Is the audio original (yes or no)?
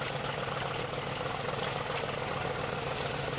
yes